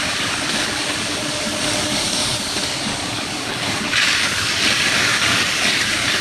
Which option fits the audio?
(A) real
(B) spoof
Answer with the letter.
B